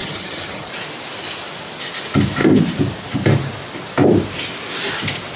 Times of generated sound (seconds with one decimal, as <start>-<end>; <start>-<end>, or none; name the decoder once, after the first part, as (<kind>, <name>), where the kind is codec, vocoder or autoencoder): 0.0-0.7 (vocoder, HiFi-GAN)